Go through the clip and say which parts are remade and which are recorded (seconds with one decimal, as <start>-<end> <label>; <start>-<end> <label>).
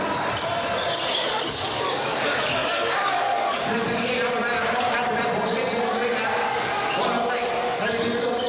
0.0-1.1 recorded; 1.1-4.1 remade; 4.1-6.4 recorded; 6.4-7.0 remade; 7.0-8.5 recorded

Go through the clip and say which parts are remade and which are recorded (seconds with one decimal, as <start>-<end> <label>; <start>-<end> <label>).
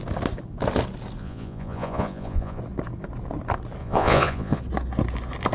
0.0-1.2 recorded; 1.2-2.6 remade; 2.6-3.8 recorded; 3.8-4.6 remade; 4.6-5.5 recorded